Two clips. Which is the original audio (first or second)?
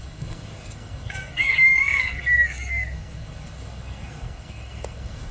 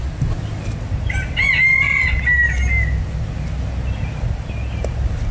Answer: second